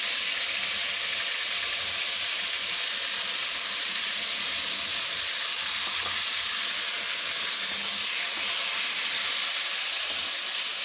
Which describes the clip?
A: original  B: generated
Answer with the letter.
A